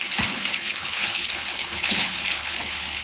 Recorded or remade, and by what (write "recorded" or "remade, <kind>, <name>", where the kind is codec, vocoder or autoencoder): remade, codec, HILCodec